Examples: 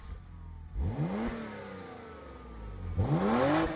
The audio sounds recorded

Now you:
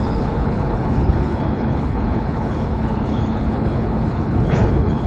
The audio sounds remade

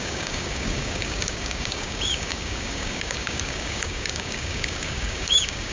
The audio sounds remade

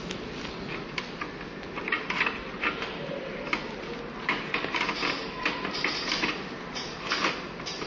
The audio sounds recorded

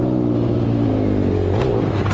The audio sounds recorded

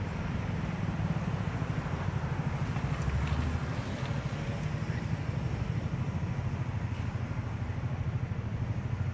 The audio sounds recorded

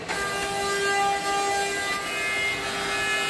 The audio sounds recorded